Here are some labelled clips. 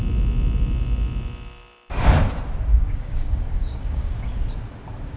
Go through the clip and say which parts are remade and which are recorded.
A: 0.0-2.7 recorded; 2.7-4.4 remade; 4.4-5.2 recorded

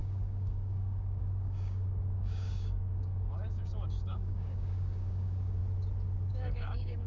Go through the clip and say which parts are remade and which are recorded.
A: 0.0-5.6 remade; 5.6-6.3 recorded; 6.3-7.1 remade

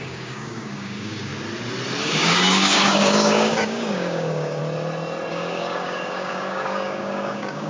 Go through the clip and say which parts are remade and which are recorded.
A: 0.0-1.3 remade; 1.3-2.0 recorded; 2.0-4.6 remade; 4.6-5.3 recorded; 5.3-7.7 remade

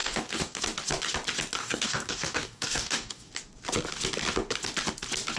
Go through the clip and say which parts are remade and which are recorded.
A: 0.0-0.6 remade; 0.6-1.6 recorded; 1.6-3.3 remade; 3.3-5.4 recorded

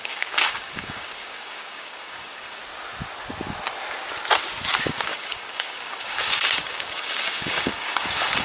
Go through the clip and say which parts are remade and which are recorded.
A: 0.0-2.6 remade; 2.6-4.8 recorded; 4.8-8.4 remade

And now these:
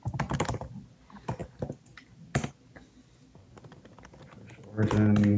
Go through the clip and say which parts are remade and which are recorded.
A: 0.0-5.4 recorded